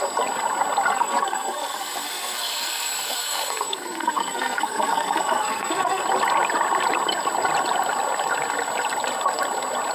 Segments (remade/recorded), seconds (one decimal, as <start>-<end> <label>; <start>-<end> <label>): 0.0-0.9 recorded; 0.9-6.0 remade; 6.0-9.9 recorded